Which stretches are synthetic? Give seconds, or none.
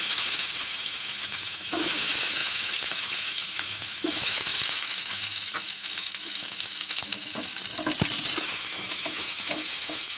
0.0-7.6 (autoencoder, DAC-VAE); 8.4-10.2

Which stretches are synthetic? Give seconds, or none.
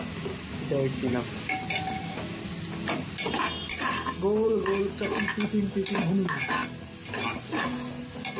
none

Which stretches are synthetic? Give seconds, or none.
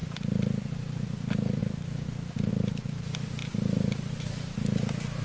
none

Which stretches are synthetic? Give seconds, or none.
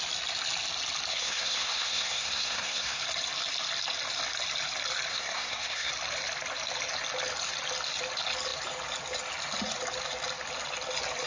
1.1-3.0 (codec, SNAC); 5.1-5.9